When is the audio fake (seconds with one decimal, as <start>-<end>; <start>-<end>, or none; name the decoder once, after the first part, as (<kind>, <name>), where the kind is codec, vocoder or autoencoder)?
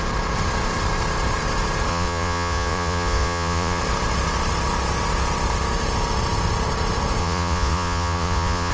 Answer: 1.9-3.8 (vocoder, Vocos); 7.2-8.7